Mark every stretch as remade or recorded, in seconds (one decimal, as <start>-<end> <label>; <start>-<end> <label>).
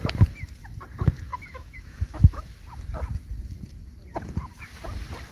0.0-1.3 recorded; 1.3-2.4 remade; 2.4-5.3 recorded